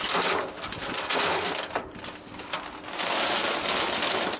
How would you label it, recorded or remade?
recorded